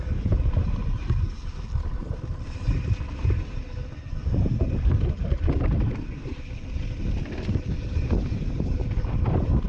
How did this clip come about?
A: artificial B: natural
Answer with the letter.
B